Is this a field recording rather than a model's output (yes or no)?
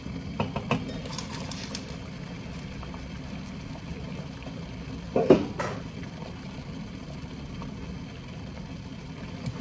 yes